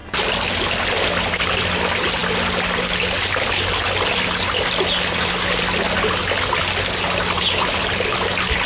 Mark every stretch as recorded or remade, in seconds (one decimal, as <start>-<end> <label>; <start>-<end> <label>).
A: 0.0-8.7 recorded